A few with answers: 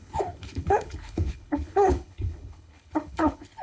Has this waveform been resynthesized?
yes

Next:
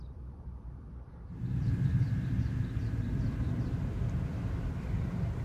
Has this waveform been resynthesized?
yes